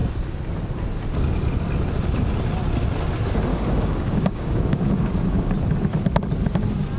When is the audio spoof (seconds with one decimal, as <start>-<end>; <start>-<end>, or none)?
3.5-5.5